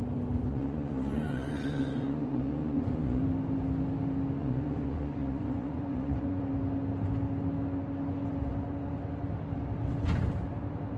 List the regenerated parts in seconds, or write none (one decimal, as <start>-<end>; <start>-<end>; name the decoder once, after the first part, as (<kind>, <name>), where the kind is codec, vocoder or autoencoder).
0.5-3.2 (vocoder, Vocos); 4.4-6.4

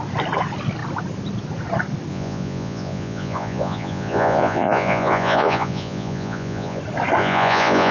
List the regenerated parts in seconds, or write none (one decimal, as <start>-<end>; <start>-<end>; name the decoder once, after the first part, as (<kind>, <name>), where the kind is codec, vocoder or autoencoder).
2.1-6.8 (vocoder, Vocos); 7.2-7.9

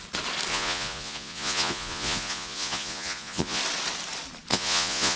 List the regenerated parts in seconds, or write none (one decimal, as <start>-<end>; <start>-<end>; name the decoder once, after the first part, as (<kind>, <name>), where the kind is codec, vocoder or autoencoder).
0.5-3.6 (vocoder, Vocos); 4.5-5.2

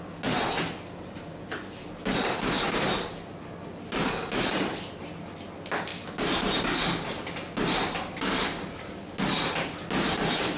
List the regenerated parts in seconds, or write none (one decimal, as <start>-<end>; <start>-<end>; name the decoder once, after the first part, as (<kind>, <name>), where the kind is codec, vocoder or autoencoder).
none

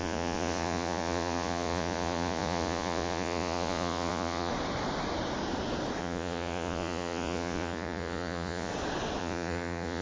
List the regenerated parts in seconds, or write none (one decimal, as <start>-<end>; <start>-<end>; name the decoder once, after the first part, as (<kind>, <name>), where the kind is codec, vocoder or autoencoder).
0.0-4.5 (vocoder, Vocos); 6.0-8.7; 9.2-10.0

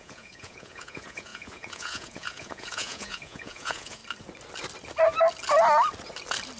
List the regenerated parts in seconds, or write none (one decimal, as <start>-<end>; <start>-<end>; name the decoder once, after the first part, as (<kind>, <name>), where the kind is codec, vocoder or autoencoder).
0.0-4.0 (vocoder, Vocos)

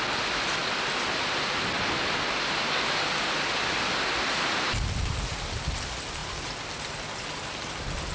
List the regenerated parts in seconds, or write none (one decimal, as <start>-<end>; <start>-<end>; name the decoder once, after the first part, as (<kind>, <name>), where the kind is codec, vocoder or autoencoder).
none

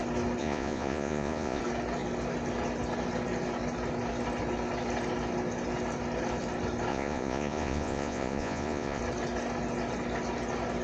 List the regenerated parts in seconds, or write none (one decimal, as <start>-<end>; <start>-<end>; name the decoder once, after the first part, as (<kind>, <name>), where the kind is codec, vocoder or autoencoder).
0.4-1.6 (vocoder, Vocos); 6.9-9.0